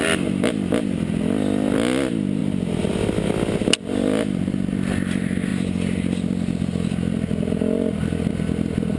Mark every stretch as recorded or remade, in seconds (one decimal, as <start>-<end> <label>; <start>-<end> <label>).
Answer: 0.0-9.0 recorded